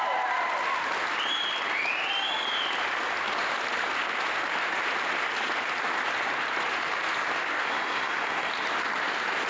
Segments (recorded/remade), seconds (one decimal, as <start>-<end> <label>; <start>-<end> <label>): 0.0-7.6 recorded; 7.6-8.5 remade; 8.5-9.5 recorded